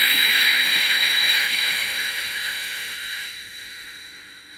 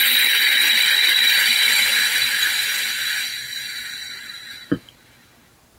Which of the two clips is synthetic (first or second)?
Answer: first